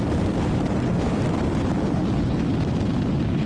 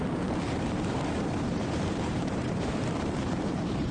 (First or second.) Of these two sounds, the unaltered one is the first